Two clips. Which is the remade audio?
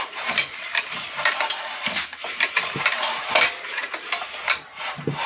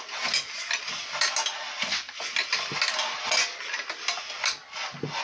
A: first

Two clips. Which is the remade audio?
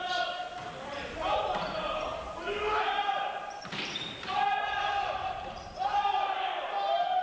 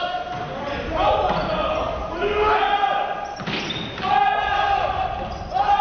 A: first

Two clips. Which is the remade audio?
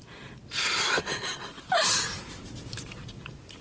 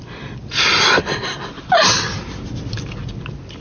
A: first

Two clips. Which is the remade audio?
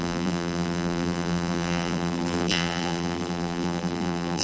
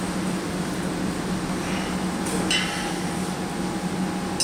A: first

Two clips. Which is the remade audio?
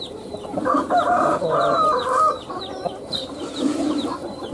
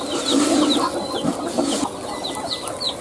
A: first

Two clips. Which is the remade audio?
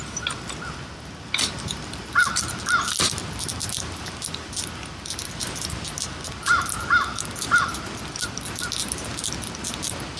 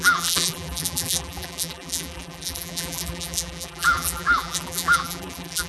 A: second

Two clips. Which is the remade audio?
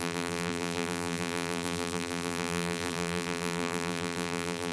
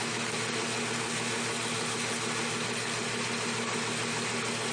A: first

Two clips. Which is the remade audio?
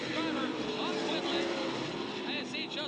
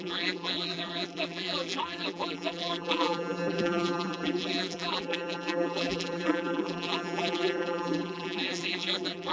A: second